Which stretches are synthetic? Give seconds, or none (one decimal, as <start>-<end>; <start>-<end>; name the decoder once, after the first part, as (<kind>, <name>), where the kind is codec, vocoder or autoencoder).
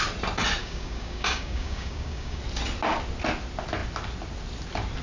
0.6-2.4 (codec, DAC)